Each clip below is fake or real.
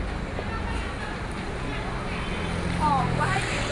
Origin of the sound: real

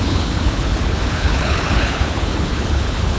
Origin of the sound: fake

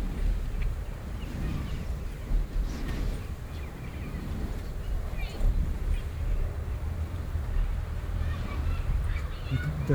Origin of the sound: fake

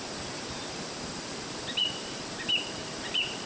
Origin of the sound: fake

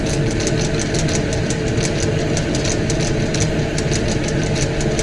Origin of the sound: real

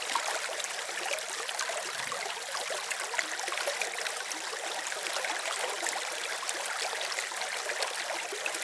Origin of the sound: real